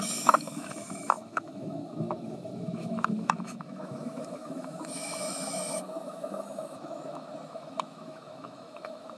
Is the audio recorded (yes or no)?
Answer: no